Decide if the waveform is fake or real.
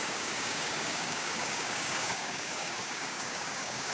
fake